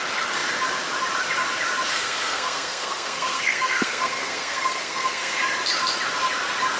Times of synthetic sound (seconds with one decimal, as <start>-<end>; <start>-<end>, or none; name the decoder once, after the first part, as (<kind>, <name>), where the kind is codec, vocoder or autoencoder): 1.9-5.4 (codec, SNAC)